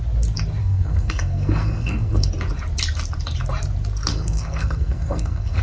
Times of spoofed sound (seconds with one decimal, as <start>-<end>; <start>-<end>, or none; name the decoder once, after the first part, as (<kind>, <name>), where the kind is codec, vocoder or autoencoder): 0.6-2.3 (codec, SNAC); 4.1-5.6